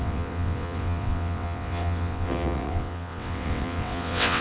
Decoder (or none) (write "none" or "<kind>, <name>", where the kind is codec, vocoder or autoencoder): vocoder, WaveNeXt